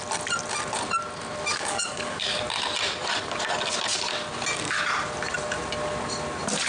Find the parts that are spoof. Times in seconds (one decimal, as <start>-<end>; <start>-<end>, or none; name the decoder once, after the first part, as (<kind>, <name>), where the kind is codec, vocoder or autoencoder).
1.5-2.4 (codec, DAC)